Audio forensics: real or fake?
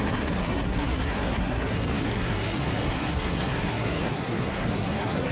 fake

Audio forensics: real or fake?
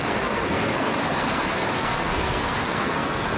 fake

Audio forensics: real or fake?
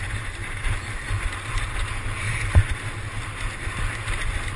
real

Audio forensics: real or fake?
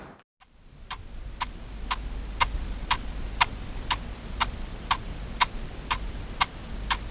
real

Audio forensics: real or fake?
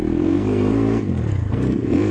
fake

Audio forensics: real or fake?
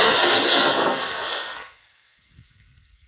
fake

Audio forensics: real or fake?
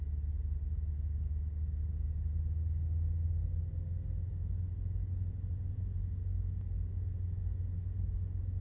real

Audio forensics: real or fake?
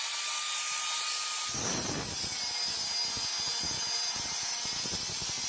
real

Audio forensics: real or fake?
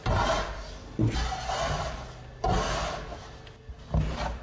real